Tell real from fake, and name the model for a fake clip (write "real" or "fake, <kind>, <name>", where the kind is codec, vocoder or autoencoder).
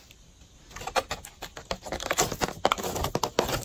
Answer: real